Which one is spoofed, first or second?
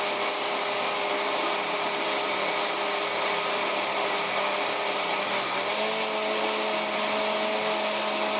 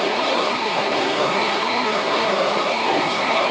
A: second